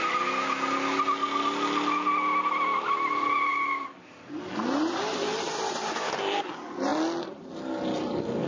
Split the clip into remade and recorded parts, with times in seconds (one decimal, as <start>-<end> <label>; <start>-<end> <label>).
0.0-8.5 recorded